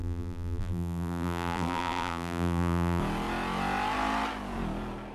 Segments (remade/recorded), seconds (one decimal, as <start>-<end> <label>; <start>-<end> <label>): 0.0-3.0 remade; 3.0-5.1 recorded